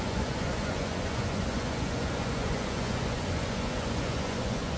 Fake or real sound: fake